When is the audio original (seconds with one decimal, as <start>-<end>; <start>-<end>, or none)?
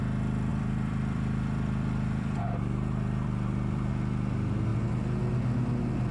0.0-0.5; 3.9-6.1